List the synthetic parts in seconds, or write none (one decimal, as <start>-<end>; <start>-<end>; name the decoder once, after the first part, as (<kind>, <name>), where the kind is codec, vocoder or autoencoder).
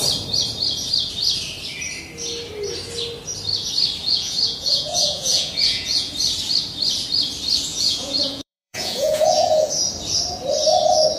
4.0-6.1 (vocoder, Vocos); 7.7-9.7